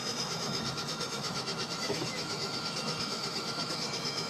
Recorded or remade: remade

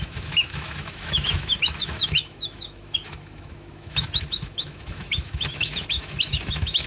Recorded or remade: remade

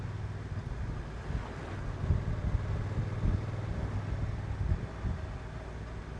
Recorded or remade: recorded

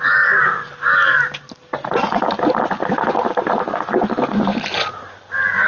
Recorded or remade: recorded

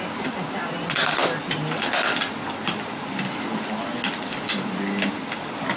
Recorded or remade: recorded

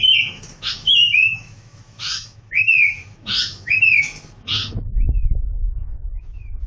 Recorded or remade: remade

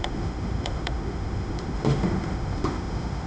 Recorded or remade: remade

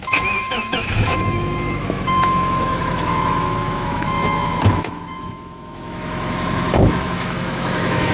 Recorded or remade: remade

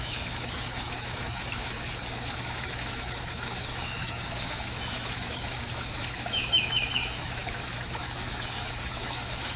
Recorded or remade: remade